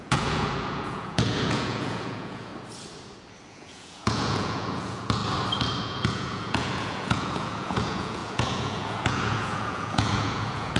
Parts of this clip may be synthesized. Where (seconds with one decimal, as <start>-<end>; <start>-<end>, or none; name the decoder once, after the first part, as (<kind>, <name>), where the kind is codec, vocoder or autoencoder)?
0.0-2.5 (vocoder, Vocos); 3.5-5.2; 5.8-10.8